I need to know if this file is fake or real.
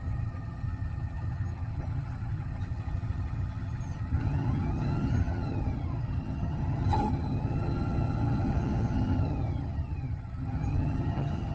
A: fake